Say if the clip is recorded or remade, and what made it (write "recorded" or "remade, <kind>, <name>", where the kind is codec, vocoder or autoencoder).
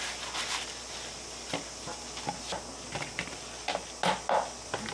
recorded